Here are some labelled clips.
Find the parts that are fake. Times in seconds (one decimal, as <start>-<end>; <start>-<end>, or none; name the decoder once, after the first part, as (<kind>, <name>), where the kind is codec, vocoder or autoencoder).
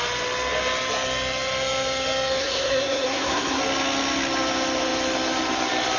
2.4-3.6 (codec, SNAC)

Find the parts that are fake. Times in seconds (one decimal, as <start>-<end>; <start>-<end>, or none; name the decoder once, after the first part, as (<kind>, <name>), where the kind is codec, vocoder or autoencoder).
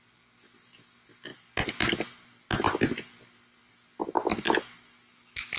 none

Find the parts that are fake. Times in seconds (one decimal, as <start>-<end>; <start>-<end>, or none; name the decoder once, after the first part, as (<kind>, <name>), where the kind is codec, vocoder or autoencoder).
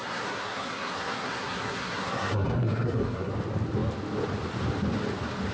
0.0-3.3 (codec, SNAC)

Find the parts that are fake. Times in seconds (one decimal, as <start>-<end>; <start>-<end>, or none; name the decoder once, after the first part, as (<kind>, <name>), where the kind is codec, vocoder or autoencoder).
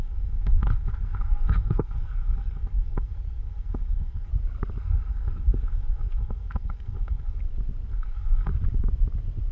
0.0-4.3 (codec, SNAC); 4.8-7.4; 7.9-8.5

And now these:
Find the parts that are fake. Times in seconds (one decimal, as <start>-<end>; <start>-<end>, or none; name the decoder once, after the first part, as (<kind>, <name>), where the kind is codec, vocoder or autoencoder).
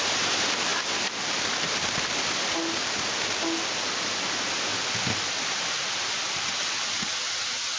none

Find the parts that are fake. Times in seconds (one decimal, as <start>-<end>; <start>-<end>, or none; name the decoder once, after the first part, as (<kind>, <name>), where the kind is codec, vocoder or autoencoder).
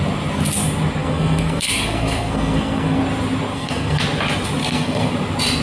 1.0-3.0 (codec, SNAC); 3.5-4.0; 4.6-5.1